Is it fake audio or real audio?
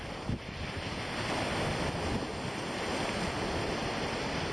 real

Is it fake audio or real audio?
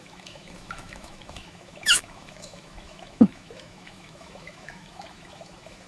fake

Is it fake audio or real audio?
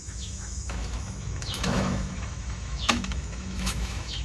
fake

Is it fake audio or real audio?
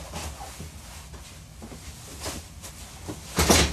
real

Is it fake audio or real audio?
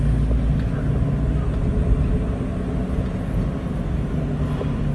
real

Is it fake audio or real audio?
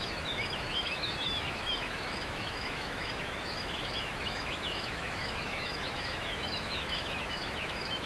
fake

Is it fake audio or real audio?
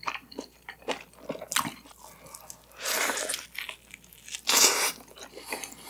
real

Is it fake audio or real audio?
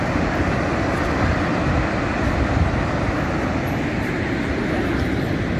real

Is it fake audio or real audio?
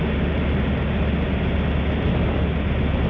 real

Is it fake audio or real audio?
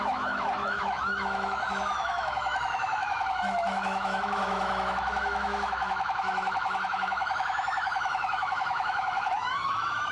fake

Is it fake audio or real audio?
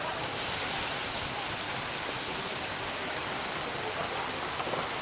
real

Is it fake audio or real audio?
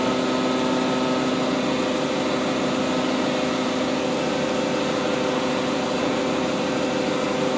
real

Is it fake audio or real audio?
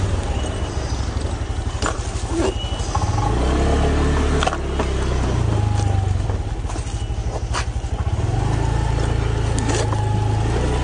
real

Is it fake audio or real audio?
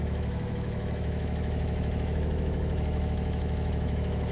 fake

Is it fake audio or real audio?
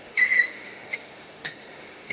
fake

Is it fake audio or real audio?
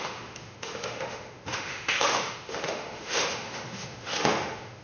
fake